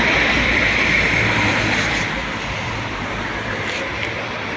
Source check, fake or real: fake